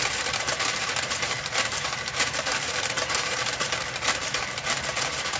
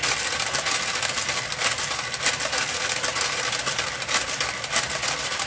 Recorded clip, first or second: second